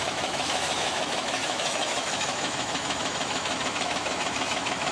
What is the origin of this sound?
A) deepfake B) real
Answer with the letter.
A